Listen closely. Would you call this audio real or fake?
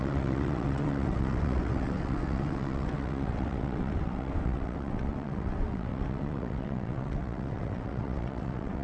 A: fake